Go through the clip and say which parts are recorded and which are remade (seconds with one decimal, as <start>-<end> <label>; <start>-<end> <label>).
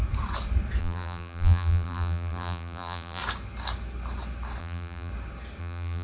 0.0-0.8 recorded; 0.8-3.2 remade; 3.2-4.6 recorded; 4.6-5.1 remade; 5.1-5.6 recorded; 5.6-6.0 remade